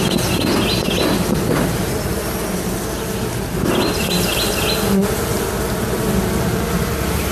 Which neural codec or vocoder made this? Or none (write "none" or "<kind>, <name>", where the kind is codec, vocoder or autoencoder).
none